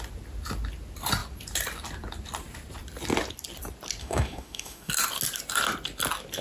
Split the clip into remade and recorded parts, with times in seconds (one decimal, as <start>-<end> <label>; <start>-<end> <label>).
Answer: 0.0-4.0 recorded; 4.0-4.9 remade; 4.9-6.4 recorded